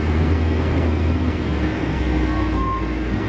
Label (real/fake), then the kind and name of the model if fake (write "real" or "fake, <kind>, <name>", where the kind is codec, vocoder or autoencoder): fake, codec, SNAC